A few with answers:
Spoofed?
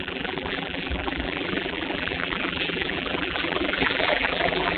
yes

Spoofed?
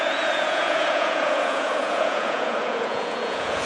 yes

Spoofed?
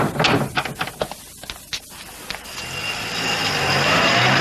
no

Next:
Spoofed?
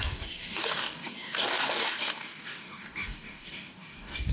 yes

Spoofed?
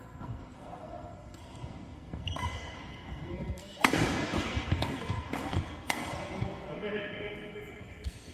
yes